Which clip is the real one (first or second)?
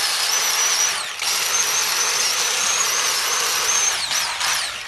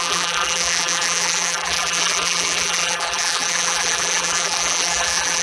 first